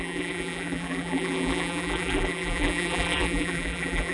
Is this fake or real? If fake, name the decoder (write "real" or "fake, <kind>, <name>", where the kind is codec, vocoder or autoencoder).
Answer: fake, vocoder, BigVGAN v2